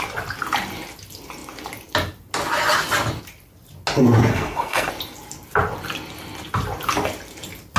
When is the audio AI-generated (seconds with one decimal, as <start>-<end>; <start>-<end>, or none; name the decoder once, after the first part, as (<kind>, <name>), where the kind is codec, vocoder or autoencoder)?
4.3-4.9 (codec, SNAC)